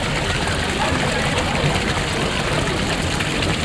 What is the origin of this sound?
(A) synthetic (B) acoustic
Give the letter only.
B